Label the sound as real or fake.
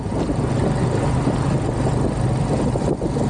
real